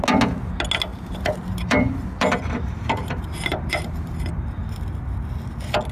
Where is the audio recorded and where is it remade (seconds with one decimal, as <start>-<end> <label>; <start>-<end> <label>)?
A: 0.0-0.9 recorded; 0.9-4.4 remade; 4.4-5.9 recorded